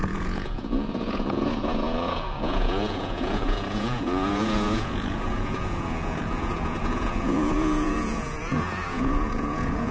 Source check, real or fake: fake